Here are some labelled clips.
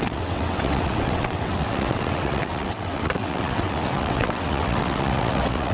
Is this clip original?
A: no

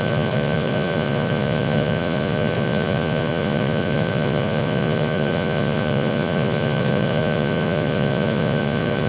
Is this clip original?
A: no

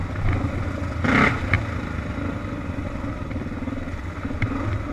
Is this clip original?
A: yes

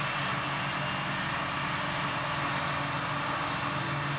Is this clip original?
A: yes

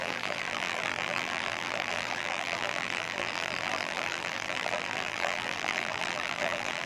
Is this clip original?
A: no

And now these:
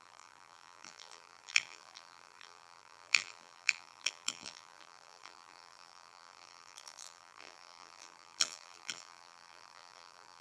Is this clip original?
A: no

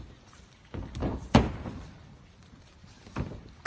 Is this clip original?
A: no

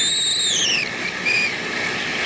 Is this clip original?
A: yes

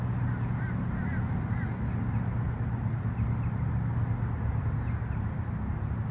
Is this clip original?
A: yes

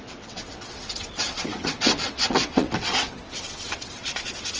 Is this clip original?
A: no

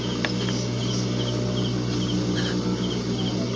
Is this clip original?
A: yes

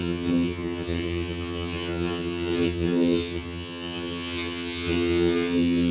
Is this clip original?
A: no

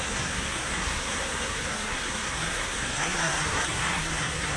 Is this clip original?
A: no